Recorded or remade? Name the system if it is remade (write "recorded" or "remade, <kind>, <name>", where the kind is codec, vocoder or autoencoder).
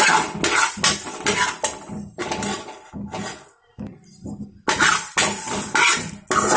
recorded